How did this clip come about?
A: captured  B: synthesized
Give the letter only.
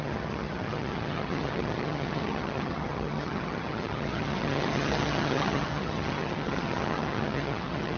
B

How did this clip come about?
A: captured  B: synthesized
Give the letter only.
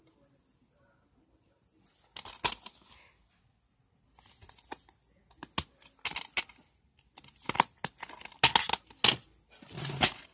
A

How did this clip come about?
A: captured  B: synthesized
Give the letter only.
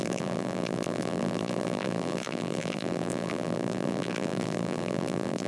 B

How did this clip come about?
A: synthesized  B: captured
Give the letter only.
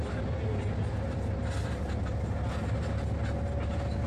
B